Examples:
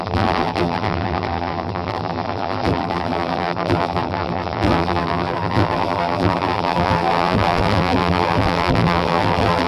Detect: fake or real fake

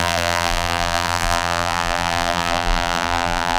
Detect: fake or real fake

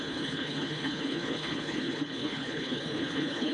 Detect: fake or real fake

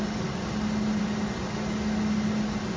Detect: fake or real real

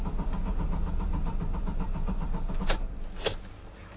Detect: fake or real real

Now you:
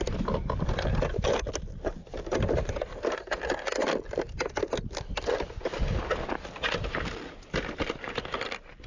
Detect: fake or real real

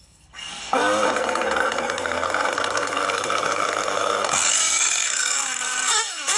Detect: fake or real fake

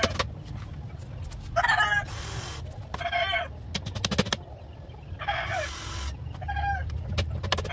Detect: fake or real real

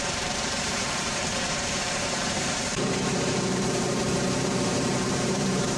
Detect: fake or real fake